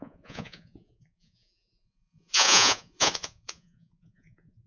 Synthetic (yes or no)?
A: yes